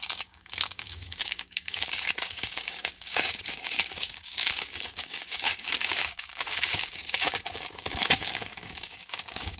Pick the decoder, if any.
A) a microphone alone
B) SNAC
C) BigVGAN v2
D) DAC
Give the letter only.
D